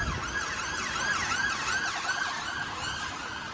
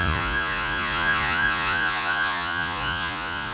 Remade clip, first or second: second